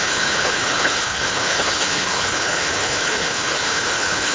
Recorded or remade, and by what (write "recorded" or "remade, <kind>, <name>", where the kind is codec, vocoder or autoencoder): remade, codec, HILCodec